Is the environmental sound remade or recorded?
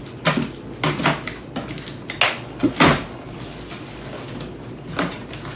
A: recorded